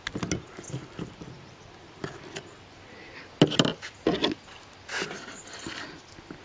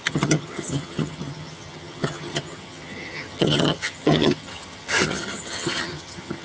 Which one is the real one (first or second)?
first